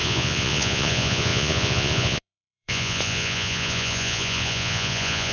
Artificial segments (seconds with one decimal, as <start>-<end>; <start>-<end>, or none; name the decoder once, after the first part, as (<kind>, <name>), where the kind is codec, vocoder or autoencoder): 0.0-5.3 (vocoder, Vocos)